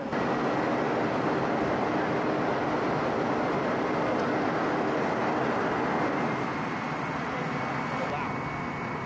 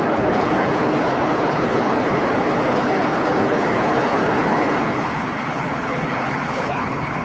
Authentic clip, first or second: first